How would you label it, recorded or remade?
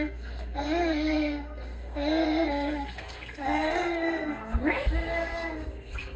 remade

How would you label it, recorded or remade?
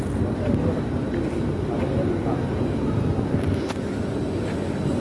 recorded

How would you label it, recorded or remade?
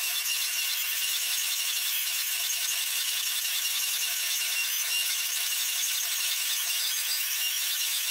remade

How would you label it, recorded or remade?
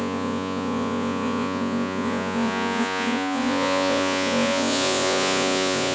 remade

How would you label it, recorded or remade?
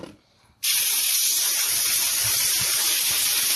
remade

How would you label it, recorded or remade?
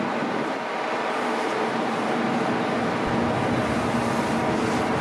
recorded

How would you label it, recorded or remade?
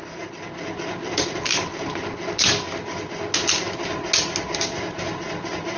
recorded